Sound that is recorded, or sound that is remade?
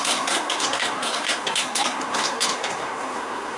remade